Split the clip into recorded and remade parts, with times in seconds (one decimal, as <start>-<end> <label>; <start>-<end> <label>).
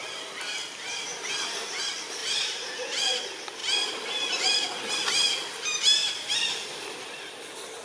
0.0-2.2 recorded; 2.2-3.2 remade; 3.2-3.6 recorded; 3.6-4.9 remade; 4.9-6.0 recorded; 6.0-6.7 remade; 6.7-7.8 recorded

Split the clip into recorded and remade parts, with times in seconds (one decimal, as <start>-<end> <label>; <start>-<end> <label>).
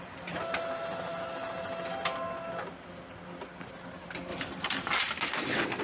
0.0-4.3 recorded; 4.3-5.0 remade; 5.0-5.8 recorded